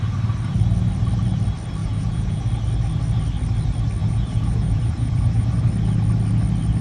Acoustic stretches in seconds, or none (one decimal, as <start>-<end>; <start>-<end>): 0.0-1.8; 2.4-4.0; 5.6-6.8